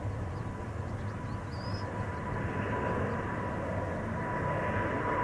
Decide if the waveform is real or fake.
real